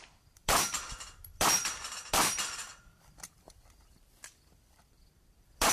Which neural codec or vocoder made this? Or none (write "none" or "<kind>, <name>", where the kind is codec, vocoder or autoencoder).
vocoder, BigVGAN v2